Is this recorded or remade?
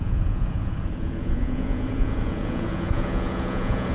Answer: remade